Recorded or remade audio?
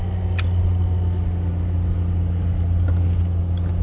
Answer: recorded